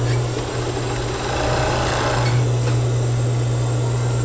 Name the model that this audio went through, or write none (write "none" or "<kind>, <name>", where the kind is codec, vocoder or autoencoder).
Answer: none